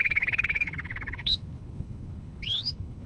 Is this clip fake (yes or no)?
yes